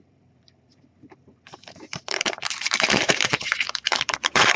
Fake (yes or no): yes